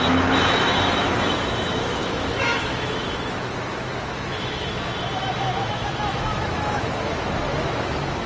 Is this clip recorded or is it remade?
remade